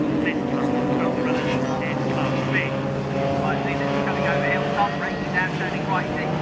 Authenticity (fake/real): real